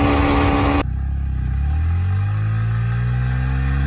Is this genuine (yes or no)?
yes